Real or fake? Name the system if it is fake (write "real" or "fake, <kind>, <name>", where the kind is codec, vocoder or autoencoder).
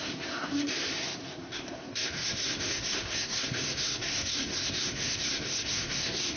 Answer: fake, codec, SNAC